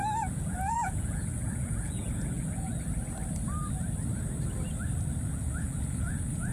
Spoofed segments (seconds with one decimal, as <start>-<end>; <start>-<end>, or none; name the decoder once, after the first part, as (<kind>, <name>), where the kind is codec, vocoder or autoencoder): 0.0-2.7 (vocoder, Vocos); 5.3-6.5